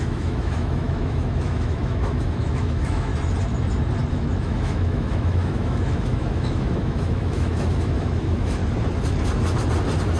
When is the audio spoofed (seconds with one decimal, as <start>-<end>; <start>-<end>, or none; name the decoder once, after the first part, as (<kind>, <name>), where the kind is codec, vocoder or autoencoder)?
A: 0.0-3.1 (autoencoder, DAC-VAE); 4.1-8.6

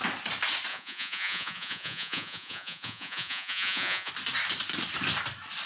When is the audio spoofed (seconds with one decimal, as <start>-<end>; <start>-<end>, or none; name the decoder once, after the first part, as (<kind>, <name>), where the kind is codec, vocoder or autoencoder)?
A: 0.7-4.1 (vocoder, Vocos)

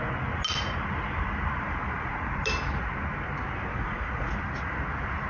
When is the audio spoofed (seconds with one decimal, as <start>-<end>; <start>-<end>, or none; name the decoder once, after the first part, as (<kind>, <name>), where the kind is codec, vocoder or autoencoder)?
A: 1.8-2.3 (vocoder, Vocos); 3.7-4.3

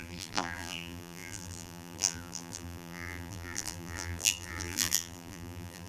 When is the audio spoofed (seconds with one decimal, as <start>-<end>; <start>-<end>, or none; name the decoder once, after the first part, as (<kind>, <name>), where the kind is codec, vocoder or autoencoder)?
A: 0.0-5.9 (vocoder, BigVGAN v2)